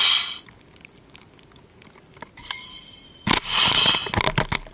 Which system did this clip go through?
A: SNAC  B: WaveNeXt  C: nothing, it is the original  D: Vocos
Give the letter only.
C